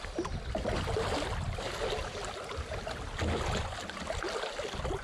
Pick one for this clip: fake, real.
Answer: real